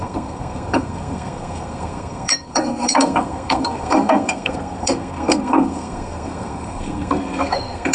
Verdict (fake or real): fake